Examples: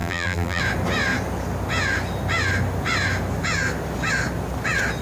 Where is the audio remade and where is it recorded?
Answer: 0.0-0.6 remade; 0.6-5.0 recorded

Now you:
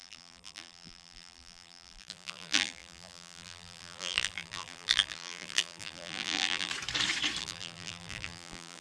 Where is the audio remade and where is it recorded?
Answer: 0.0-6.7 remade; 6.7-7.4 recorded; 7.4-8.8 remade

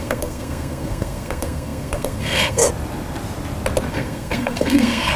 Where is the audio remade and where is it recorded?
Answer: 0.0-2.6 remade; 2.6-3.9 recorded; 3.9-5.2 remade

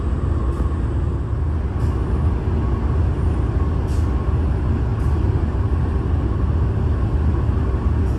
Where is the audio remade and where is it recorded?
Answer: 0.0-4.9 recorded; 4.9-6.0 remade; 6.0-8.2 recorded

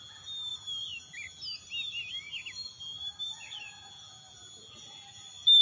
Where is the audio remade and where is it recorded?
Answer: 0.0-5.6 recorded

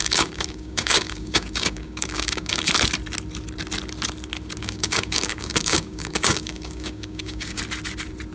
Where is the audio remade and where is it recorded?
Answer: 0.0-2.7 remade; 2.7-4.6 recorded; 4.6-7.6 remade; 7.6-8.3 recorded

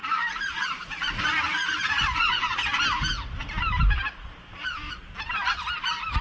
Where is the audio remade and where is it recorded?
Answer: 0.0-2.6 remade; 2.6-6.2 recorded

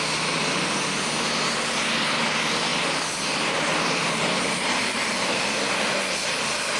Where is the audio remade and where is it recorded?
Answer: 0.0-6.8 recorded